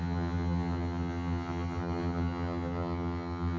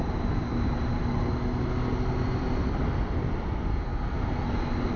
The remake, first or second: first